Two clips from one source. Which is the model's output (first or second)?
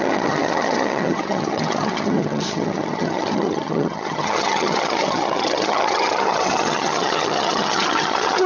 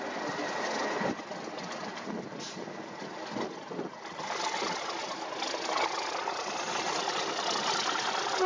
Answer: first